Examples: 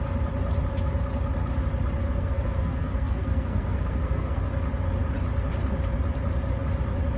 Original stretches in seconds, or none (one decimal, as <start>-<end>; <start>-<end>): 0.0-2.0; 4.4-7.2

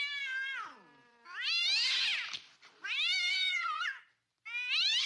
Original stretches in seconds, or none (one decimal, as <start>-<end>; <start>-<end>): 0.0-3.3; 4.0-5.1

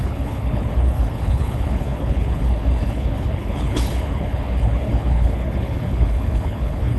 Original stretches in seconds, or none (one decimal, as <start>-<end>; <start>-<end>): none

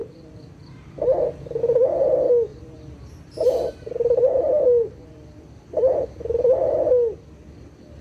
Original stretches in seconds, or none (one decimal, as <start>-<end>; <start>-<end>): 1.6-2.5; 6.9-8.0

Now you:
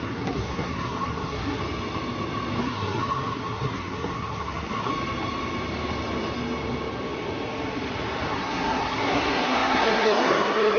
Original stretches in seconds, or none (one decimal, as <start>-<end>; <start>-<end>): 1.6-2.6; 4.9-8.3

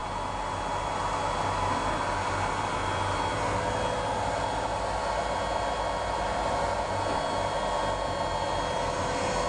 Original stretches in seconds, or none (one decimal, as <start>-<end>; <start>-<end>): 0.0-9.5

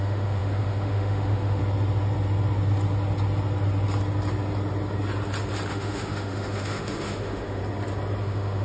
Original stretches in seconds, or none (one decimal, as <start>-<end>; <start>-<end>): 1.6-5.7; 7.6-8.2